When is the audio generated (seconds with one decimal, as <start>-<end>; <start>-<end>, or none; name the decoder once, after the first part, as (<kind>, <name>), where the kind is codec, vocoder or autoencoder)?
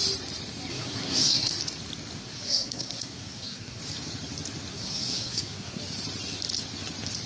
0.7-1.5 (codec, SNAC); 2.2-3.8; 4.7-5.8